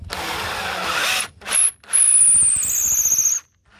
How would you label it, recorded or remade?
recorded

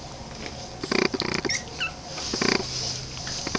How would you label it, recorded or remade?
recorded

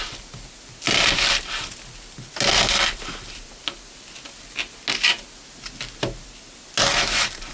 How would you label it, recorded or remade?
recorded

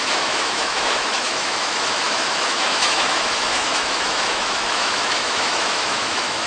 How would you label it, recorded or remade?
remade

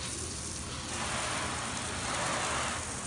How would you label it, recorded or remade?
recorded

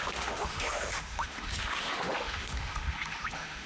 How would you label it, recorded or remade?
remade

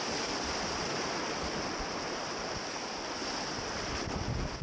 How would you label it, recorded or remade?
recorded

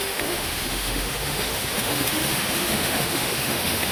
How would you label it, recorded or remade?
remade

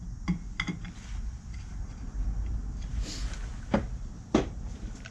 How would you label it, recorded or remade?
recorded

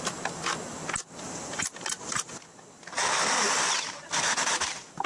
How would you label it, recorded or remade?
recorded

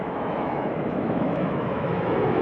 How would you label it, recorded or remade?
remade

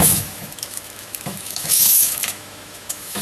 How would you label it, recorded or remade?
remade